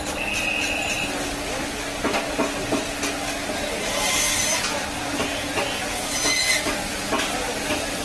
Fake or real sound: real